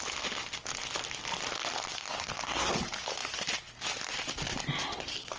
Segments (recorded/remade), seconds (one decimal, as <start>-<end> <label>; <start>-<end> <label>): 0.0-2.0 recorded; 2.0-2.7 remade; 2.7-5.4 recorded